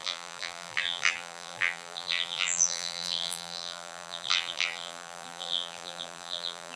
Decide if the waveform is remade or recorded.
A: remade